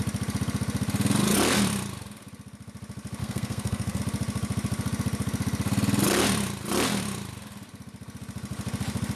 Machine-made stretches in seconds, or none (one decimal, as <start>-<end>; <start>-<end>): 3.2-4.0